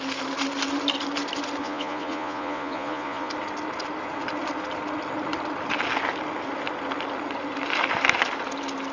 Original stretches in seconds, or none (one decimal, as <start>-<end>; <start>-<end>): 0.0-1.6; 3.3-8.9